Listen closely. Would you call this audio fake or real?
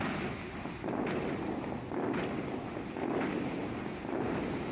real